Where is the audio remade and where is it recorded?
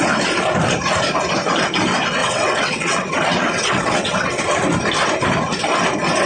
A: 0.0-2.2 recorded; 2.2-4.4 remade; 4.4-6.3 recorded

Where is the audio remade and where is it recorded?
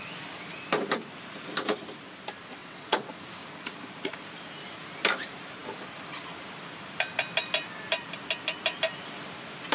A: 0.0-2.6 recorded; 2.6-3.1 remade; 3.1-9.7 recorded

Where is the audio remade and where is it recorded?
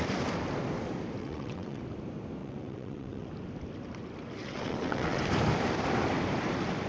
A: 0.0-1.2 recorded; 1.2-1.8 remade; 1.8-2.4 recorded; 2.4-3.3 remade; 3.3-4.4 recorded; 4.4-5.2 remade; 5.2-6.9 recorded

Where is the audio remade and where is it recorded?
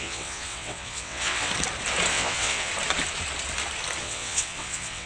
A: 0.0-1.5 remade; 1.5-2.1 recorded; 2.1-2.7 remade; 2.7-4.0 recorded; 4.0-5.1 remade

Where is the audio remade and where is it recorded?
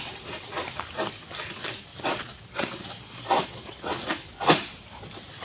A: 0.0-1.9 recorded; 1.9-4.0 remade; 4.0-5.4 recorded